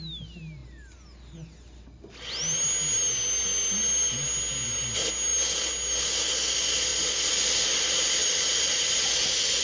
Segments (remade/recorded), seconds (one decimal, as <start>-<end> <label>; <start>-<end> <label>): 0.0-9.6 recorded